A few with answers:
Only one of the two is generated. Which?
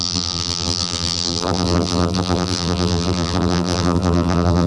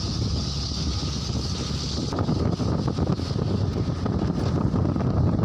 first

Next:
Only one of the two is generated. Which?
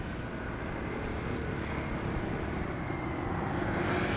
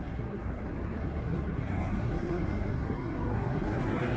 second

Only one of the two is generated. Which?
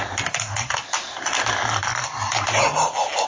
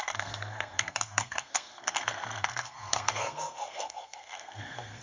second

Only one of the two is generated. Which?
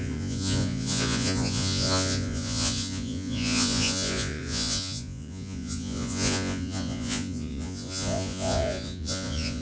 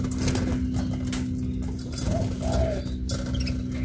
first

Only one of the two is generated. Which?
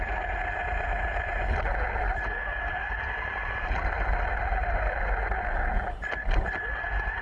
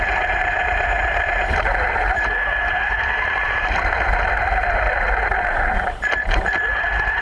second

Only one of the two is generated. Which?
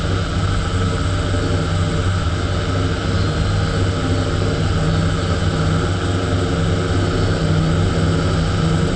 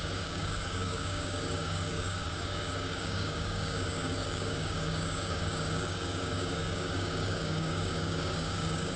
second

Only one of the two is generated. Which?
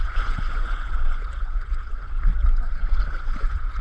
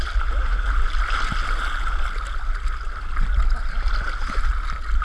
first